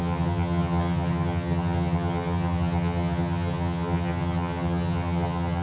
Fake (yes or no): yes